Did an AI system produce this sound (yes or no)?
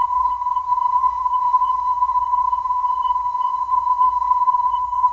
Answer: yes